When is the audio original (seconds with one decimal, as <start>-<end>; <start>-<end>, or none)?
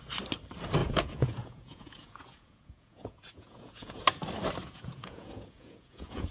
0.0-0.8; 4.0-4.6